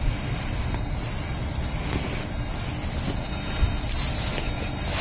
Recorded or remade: recorded